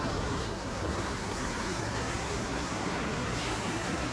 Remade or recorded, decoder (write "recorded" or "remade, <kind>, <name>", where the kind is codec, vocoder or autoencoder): remade, codec, SNAC